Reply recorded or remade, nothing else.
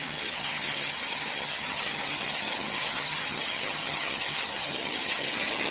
remade